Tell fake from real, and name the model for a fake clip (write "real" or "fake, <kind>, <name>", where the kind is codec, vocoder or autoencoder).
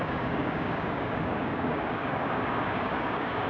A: fake, codec, DAC